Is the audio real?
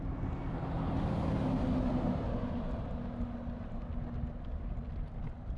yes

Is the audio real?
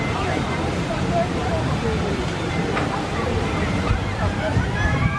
no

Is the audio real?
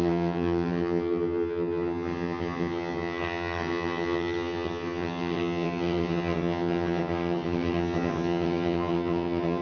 no